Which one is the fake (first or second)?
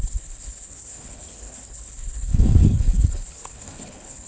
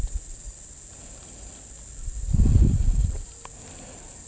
first